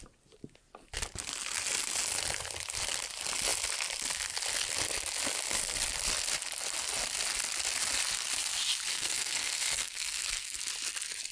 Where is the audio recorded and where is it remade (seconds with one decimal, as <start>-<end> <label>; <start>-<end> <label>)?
0.0-8.9 recorded; 8.9-10.6 remade; 10.6-11.3 recorded